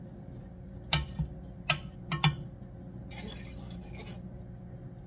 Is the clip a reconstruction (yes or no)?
no